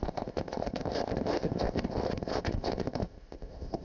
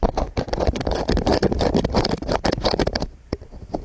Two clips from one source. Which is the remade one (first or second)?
first